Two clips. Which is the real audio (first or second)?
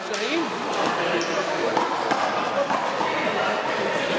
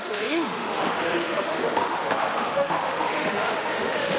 first